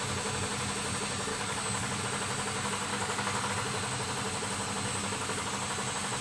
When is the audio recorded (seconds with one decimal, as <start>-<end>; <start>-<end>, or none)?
0.0-1.3; 2.0-2.9; 3.5-4.9; 5.5-6.2